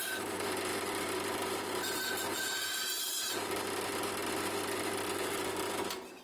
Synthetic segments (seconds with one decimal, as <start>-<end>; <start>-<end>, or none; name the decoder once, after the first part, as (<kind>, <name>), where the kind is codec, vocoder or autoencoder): none